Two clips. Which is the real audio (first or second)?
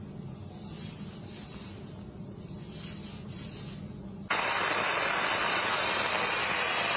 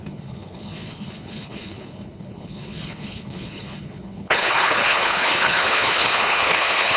first